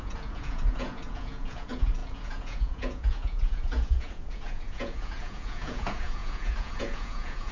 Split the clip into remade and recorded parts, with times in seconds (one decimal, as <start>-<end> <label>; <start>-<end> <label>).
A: 0.0-7.5 remade